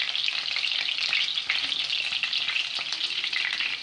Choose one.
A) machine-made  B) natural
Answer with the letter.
B